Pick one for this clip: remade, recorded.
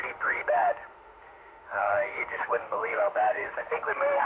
remade